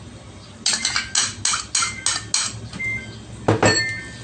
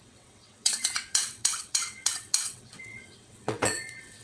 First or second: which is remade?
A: second